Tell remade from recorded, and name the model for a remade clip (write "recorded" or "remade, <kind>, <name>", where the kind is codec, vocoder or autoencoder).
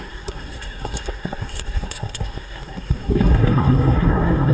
remade, codec, SNAC